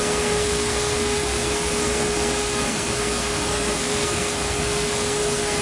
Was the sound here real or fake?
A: fake